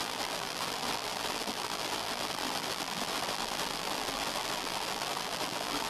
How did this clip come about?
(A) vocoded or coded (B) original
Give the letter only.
A